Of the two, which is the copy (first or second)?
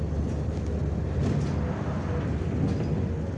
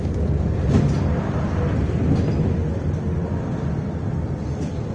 second